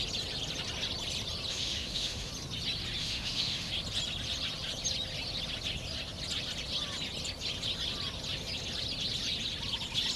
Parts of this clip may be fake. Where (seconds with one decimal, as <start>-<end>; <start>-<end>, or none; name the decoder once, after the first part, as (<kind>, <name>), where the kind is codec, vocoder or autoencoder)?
1.5-2.3 (autoencoder, DAC-VAE); 3.0-3.7